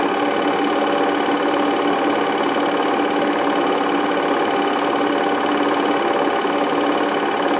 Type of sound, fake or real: real